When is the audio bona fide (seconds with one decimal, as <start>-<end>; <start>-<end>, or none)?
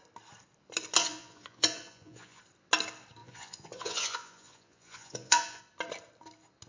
0.0-1.0; 2.4-3.2; 5.6-6.7